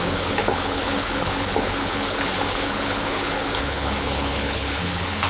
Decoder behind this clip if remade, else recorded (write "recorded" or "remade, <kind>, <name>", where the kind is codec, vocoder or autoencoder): remade, codec, HILCodec